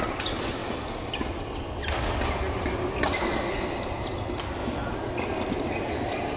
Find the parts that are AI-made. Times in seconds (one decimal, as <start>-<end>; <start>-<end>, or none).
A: none